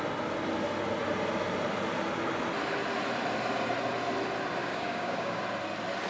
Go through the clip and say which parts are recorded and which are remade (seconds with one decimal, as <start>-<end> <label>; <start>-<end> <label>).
0.0-4.6 recorded; 4.6-5.4 remade; 5.4-6.1 recorded